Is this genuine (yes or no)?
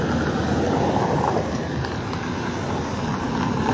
yes